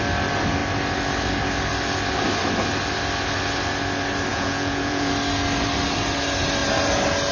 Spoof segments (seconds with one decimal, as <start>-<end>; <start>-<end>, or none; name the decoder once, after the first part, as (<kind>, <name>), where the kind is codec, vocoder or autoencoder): 4.3-5.1 (vocoder, Vocos)